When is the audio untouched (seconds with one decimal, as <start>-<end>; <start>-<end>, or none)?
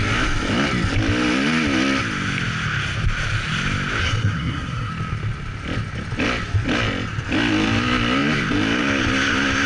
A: 0.0-4.0; 4.9-9.7